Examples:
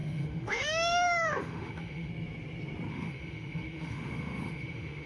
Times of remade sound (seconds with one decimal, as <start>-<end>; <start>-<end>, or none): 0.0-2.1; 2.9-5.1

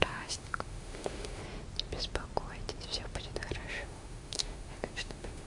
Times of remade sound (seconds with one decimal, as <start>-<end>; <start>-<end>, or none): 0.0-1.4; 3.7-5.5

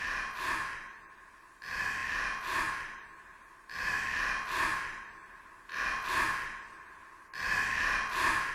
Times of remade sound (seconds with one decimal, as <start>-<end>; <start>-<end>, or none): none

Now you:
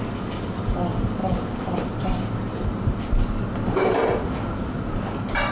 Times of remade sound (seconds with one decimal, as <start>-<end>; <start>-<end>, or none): none

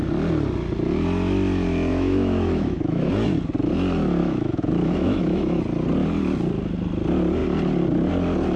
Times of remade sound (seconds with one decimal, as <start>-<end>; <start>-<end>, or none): 1.9-3.1; 4.2-5.6

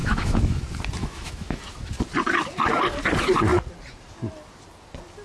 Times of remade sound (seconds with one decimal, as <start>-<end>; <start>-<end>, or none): 0.0-0.6; 1.0-1.6

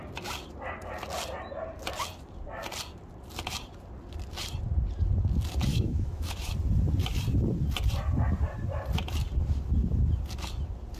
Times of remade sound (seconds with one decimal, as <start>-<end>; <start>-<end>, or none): 5.7-6.5

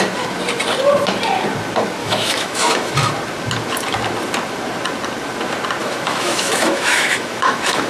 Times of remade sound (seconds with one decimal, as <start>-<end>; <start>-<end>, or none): 2.0-2.9; 5.8-7.9